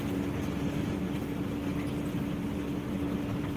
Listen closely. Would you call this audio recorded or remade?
recorded